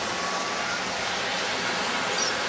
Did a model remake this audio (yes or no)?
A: no